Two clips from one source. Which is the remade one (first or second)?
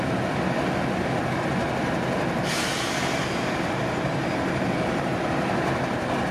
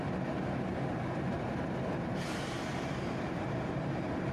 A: second